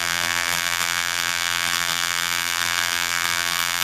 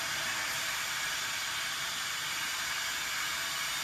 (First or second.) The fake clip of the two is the first